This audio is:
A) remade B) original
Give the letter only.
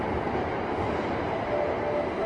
B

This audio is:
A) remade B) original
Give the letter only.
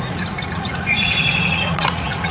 A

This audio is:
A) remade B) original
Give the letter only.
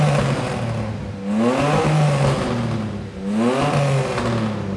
B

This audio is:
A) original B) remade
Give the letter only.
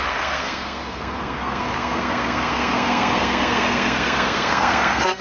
B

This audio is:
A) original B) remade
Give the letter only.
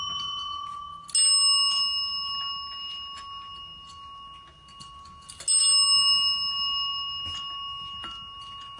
A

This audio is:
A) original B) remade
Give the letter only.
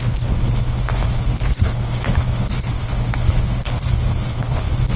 B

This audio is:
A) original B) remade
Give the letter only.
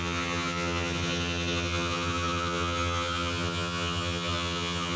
B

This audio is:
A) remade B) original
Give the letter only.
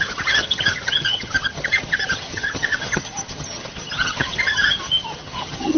A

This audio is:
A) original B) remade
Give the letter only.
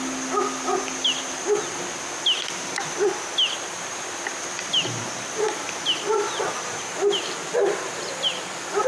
A